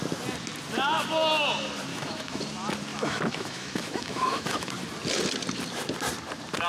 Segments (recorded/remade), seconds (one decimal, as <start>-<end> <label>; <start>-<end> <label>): 0.0-1.9 recorded; 1.9-2.4 remade; 2.4-2.9 recorded; 2.9-4.7 remade; 4.7-6.7 recorded